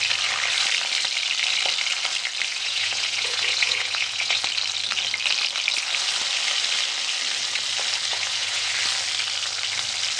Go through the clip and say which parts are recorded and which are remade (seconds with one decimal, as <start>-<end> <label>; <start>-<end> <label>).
0.0-2.5 recorded; 2.5-4.4 remade; 4.4-8.1 recorded; 8.1-8.7 remade; 8.7-10.2 recorded